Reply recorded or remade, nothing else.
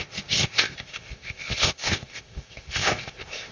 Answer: remade